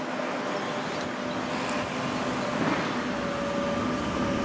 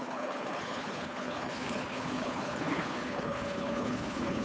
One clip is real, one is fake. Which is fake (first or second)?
second